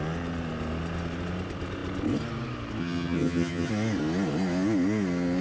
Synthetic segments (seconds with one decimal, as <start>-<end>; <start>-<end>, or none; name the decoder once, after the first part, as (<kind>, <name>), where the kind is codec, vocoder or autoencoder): 2.8-3.7 (vocoder, HiFi-GAN)